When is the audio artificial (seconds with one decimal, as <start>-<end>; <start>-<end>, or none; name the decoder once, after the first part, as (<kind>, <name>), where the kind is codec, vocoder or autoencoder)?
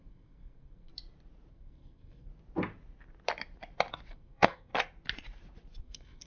0.0-0.9 (codec, SNAC); 1.5-2.3; 4.1-4.7; 5.8-6.3